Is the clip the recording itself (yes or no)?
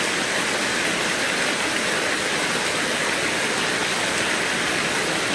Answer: yes